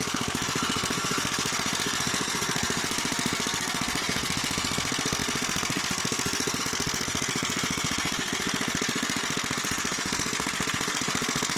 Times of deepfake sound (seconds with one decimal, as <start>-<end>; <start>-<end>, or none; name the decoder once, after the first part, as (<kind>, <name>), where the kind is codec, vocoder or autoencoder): 0.0-11.6 (codec, SNAC)